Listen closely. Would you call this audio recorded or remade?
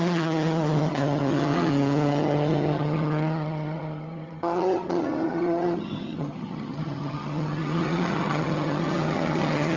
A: remade